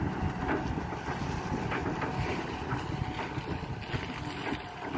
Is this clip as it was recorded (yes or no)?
yes